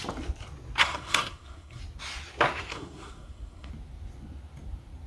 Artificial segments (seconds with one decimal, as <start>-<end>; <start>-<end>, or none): 0.8-1.8; 2.7-3.7